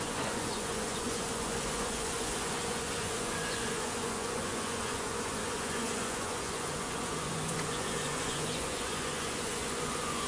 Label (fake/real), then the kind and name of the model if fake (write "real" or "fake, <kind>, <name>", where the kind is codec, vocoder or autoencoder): fake, vocoder, Vocos